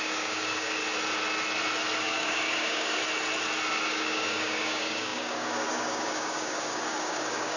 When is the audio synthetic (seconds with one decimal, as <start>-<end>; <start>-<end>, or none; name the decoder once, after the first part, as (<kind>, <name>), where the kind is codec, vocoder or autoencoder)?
0.0-0.8 (codec, DAC); 2.0-3.0; 3.7-7.6